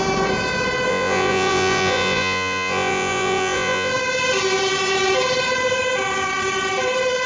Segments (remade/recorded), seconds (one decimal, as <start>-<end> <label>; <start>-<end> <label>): 0.0-0.9 recorded; 0.9-3.9 remade; 3.9-7.3 recorded